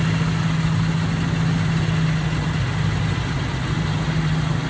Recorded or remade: recorded